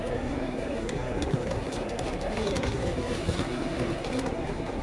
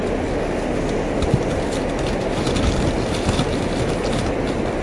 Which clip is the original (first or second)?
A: second